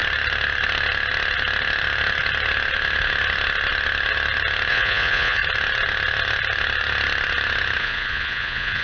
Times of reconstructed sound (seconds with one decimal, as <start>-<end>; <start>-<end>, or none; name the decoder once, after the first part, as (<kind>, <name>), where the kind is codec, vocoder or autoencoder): 4.7-5.4 (vocoder, Vocos); 7.8-8.8